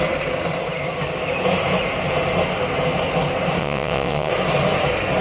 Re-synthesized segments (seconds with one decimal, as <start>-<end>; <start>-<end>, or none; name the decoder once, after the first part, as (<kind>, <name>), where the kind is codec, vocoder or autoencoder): 3.6-4.3 (vocoder, WaveNeXt)